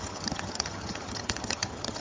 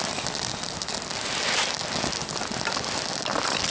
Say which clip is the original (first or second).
second